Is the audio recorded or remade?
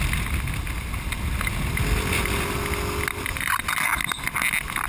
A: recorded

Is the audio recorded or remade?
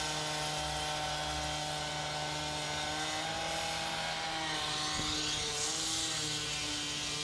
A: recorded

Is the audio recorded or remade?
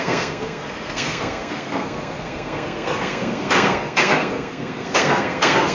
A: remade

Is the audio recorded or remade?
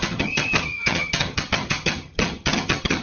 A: remade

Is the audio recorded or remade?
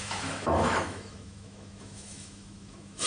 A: remade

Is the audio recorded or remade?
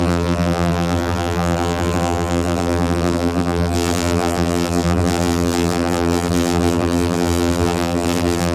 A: remade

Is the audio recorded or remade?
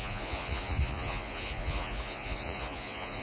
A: remade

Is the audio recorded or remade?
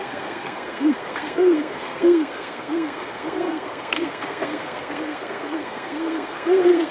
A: remade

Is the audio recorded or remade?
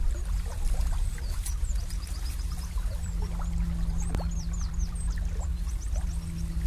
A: recorded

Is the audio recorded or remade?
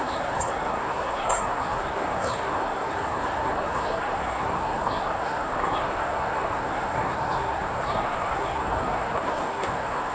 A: remade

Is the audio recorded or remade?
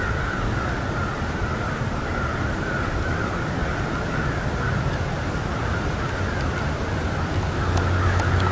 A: recorded